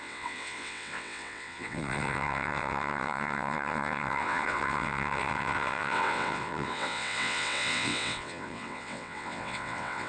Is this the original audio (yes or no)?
no